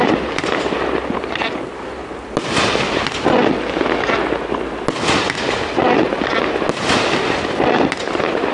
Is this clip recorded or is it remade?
recorded